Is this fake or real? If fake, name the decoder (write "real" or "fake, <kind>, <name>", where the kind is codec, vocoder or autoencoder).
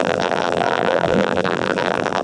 fake, vocoder, BigVGAN v2